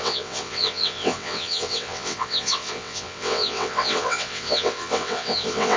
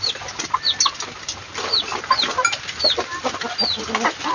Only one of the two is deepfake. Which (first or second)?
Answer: first